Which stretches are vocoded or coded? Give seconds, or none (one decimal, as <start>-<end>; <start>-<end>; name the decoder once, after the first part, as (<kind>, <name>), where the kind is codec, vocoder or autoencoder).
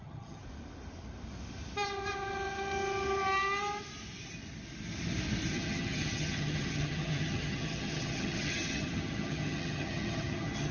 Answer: 0.0-0.4 (vocoder, HiFi-GAN); 5.5-10.7